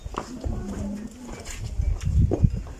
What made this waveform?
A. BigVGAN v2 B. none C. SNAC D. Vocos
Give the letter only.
B